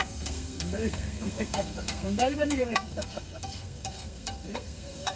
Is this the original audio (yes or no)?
no